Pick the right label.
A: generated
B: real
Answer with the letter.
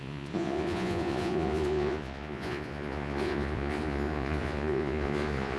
A